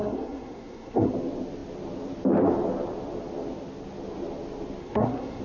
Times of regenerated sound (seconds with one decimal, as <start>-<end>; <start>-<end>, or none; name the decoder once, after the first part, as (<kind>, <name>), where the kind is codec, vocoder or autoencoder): 0.0-1.1 (codec, SNAC); 4.8-5.4